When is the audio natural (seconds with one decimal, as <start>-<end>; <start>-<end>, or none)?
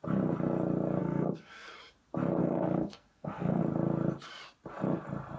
0.0-1.0; 1.7-2.4; 3.6-5.4